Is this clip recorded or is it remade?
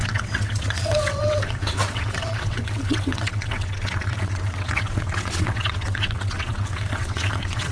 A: remade